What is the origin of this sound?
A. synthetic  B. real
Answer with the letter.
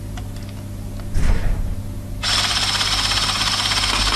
B